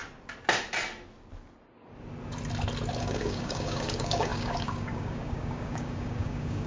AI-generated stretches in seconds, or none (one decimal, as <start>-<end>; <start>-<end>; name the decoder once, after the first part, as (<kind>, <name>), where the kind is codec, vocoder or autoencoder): 3.0-6.7 (codec, DAC)